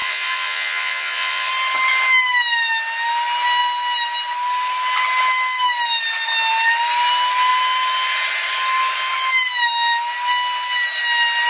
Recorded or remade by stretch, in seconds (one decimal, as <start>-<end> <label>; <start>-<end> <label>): 0.0-1.5 remade; 1.5-11.5 recorded